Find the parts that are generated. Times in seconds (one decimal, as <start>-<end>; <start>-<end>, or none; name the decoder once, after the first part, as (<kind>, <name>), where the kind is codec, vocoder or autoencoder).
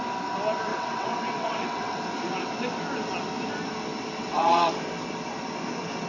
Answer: 0.7-2.0 (vocoder, WaveNeXt); 4.2-4.7